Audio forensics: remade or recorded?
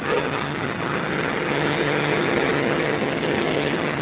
remade